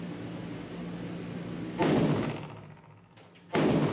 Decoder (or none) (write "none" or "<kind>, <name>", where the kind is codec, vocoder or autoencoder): none